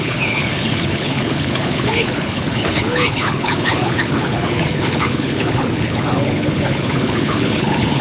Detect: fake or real fake